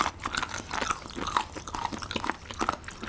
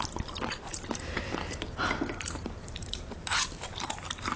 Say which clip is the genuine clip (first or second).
first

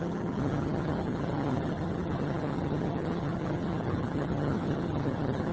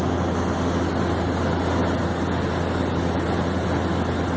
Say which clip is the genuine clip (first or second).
second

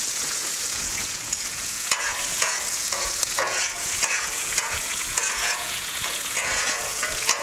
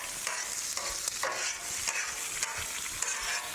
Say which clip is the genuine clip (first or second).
second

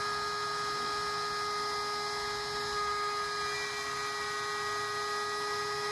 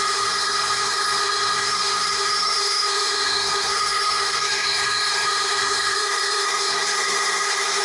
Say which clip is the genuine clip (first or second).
first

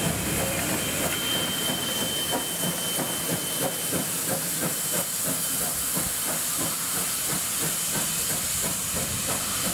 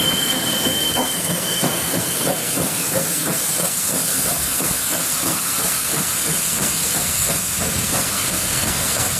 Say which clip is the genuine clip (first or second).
first